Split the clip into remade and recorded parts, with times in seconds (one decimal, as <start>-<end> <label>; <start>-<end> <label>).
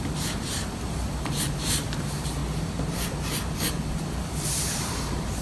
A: 0.0-2.4 remade; 2.4-4.1 recorded; 4.1-5.4 remade